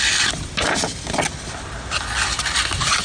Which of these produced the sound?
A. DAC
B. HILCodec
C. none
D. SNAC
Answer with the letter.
C